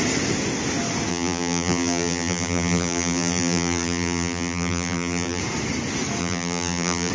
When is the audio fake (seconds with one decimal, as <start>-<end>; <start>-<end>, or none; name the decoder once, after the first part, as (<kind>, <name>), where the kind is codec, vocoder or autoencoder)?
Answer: 1.1-5.4 (vocoder, BigVGAN v2); 6.2-7.1